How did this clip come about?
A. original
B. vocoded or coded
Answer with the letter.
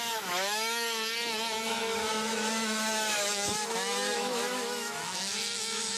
B